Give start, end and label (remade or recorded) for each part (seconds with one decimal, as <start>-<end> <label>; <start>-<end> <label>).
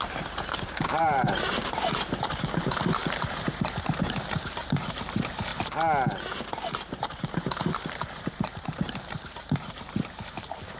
0.0-5.5 remade; 5.5-6.5 recorded; 6.5-10.8 remade